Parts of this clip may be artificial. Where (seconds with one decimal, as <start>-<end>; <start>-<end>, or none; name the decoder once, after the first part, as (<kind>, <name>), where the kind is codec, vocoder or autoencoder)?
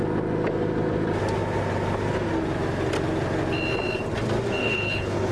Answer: 4.6-5.3 (codec, HILCodec)